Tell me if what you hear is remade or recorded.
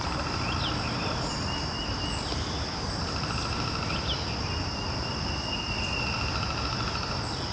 recorded